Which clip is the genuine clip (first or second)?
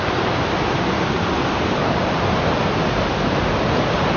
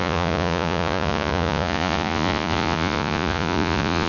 first